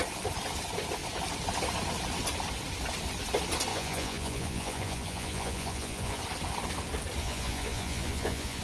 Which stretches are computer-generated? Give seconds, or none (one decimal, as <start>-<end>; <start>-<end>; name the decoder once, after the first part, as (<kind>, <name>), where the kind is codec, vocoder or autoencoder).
3.7-6.2 (vocoder, Vocos); 7.2-8.6